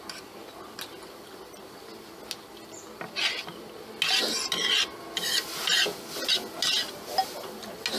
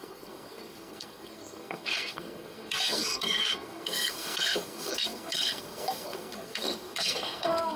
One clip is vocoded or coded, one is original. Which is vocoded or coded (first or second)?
second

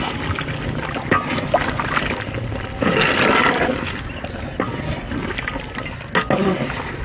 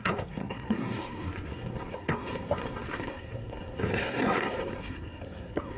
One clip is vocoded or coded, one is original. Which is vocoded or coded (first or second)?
second